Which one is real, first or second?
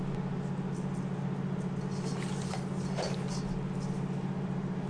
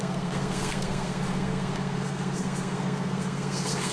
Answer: first